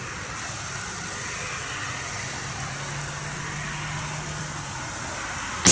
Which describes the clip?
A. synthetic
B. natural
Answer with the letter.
B